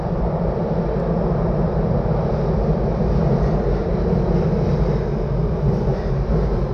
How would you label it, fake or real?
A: real